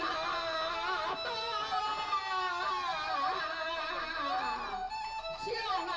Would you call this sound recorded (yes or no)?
yes